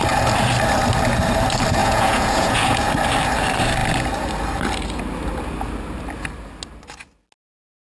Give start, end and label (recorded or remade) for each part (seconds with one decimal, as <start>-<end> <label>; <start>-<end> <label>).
0.0-1.8 recorded; 1.8-2.9 remade; 2.9-7.8 recorded